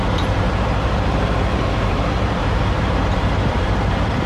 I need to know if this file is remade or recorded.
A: remade